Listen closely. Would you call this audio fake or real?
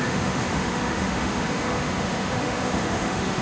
fake